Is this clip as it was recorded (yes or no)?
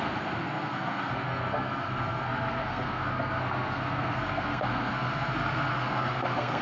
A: no